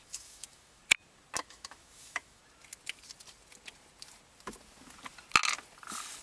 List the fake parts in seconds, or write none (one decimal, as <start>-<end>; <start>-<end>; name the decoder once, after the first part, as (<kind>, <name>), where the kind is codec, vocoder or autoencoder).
0.0-0.8 (autoencoder, DAC-VAE); 1.4-2.4